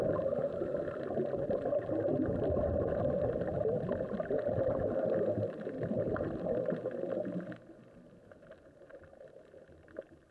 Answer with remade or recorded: recorded